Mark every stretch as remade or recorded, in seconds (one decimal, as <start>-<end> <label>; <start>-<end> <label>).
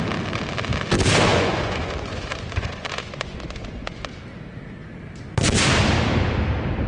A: 0.0-1.3 recorded; 1.3-4.0 remade; 4.0-6.9 recorded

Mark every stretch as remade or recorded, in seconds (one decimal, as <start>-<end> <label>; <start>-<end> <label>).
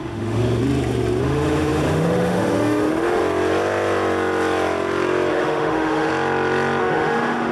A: 0.0-0.6 remade; 0.6-1.2 recorded; 1.2-3.2 remade; 3.2-5.3 recorded; 5.3-6.1 remade; 6.1-6.8 recorded; 6.8-7.5 remade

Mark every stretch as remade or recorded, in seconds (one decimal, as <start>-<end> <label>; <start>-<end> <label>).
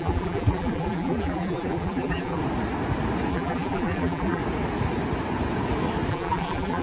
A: 0.0-2.4 remade; 2.4-3.3 recorded; 3.3-4.4 remade; 4.4-6.1 recorded; 6.1-6.8 remade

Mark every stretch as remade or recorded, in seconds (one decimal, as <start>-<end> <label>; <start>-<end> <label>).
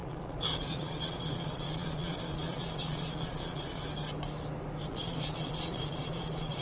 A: 0.0-3.8 remade; 3.8-4.9 recorded; 4.9-6.6 remade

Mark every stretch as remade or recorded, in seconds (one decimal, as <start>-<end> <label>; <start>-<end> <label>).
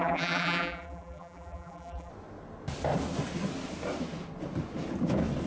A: 0.0-2.1 remade; 2.1-5.5 recorded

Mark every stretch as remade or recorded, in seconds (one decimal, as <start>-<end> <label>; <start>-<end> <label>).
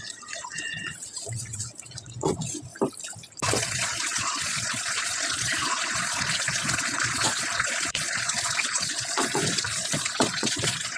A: 0.0-2.7 remade; 2.7-3.4 recorded; 3.4-11.0 remade